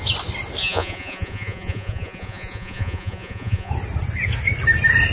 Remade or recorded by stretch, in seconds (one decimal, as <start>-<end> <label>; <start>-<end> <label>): 0.0-0.6 recorded; 0.6-3.7 remade; 3.7-5.1 recorded